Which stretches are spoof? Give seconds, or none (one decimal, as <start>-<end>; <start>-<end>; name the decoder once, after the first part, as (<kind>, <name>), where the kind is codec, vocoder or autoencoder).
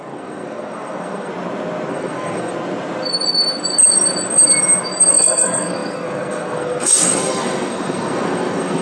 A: 0.0-1.3 (codec, SNAC); 1.9-2.5; 5.1-8.8